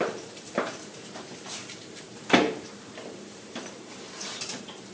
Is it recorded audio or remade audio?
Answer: remade